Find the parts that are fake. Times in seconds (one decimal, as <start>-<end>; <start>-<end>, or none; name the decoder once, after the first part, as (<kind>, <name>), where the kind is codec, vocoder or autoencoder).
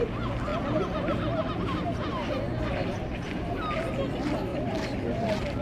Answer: 4.5-5.6 (vocoder, BigVGAN v2)